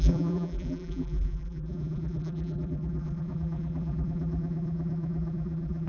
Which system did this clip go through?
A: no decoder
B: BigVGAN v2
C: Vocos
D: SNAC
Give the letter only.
B